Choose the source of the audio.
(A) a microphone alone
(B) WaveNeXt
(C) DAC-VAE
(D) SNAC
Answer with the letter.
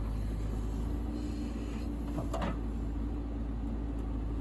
A